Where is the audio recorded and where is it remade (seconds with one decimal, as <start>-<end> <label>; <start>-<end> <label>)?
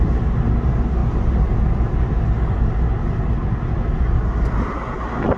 0.0-5.4 recorded